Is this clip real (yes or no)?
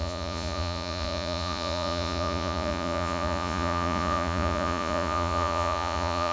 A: no